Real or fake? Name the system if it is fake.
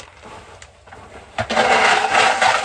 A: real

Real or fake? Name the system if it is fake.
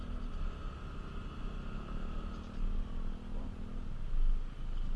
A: real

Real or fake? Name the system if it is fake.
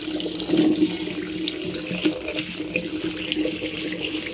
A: real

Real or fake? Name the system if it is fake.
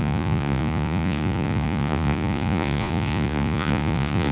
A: fake, vocoder, Vocos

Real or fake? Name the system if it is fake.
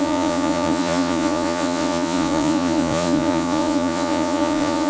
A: fake, vocoder, Vocos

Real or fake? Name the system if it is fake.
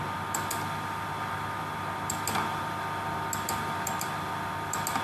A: real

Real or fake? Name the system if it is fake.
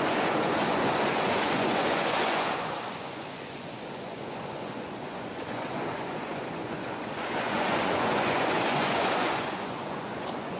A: fake, vocoder, Vocos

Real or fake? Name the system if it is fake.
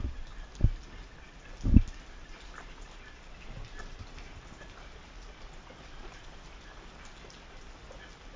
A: real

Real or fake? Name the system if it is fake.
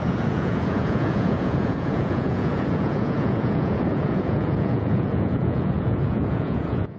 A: fake, vocoder, Vocos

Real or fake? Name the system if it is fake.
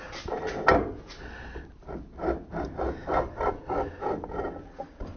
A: real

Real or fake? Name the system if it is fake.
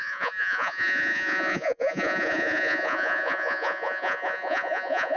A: fake, vocoder, Vocos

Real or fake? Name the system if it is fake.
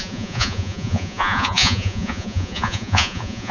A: fake, vocoder, Vocos